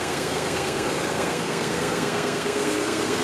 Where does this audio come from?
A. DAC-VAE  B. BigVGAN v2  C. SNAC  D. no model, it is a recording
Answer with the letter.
C